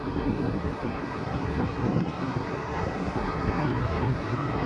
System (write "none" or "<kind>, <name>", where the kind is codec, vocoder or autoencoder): codec, SNAC